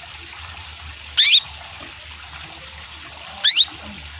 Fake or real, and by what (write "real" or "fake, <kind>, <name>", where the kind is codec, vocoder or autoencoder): real